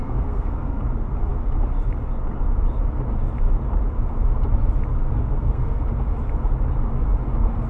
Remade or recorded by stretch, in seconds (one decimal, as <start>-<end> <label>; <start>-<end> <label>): 0.0-0.8 remade; 0.8-5.1 recorded; 5.1-5.8 remade; 5.8-7.7 recorded